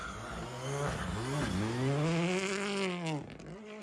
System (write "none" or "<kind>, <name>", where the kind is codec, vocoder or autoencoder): none